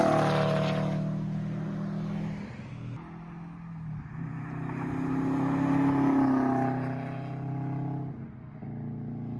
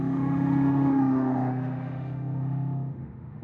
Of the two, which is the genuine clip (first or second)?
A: first